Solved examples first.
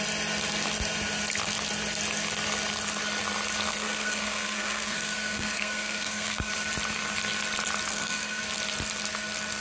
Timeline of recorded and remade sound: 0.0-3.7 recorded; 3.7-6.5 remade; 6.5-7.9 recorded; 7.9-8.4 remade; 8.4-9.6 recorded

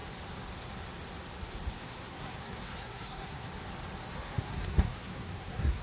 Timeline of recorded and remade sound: 0.0-1.8 recorded; 1.8-3.5 remade; 3.5-4.1 recorded; 4.1-5.8 remade

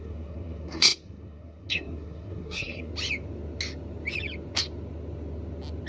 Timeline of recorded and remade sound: 0.0-2.9 remade; 2.9-5.9 recorded

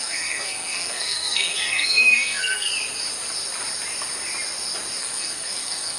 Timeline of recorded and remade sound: 0.0-2.7 remade; 2.7-5.0 recorded; 5.0-6.0 remade